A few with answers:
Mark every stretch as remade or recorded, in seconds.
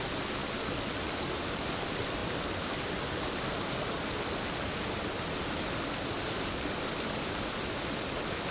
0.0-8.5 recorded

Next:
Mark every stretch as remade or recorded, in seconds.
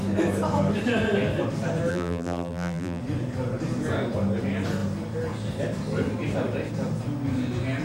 0.0-1.9 recorded; 1.9-3.0 remade; 3.0-7.8 recorded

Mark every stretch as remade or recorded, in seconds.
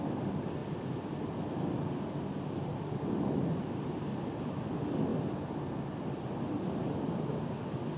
0.0-8.0 recorded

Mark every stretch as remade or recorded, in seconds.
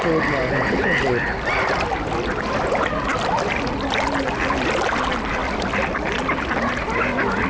0.0-5.4 recorded; 5.4-7.5 remade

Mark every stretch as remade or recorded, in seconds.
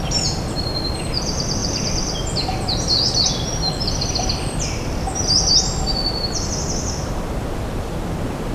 0.0-8.5 remade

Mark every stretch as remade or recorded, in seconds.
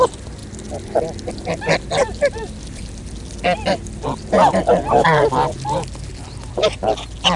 0.0-7.4 recorded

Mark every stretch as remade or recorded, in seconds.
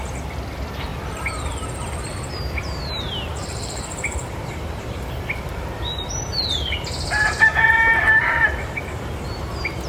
0.0-0.9 recorded; 0.9-2.8 remade; 2.8-3.3 recorded; 3.3-7.3 remade; 7.3-7.9 recorded; 7.9-8.8 remade; 8.8-9.9 recorded